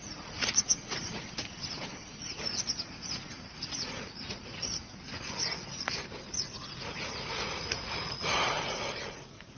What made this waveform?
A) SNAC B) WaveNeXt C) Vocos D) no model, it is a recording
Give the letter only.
C